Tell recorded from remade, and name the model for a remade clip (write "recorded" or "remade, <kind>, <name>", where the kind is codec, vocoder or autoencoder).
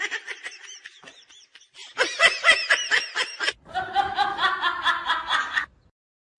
remade, vocoder, BigVGAN v2